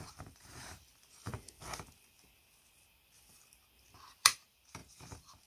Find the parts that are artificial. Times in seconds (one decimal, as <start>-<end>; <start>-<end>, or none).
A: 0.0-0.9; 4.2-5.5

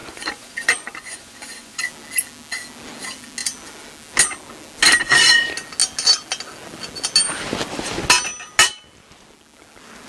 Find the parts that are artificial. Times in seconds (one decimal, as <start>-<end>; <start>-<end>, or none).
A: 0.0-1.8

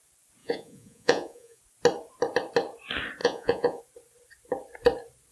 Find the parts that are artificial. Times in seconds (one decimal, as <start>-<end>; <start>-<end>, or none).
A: 0.4-1.6; 3.2-3.8